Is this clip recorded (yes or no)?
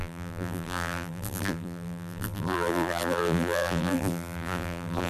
no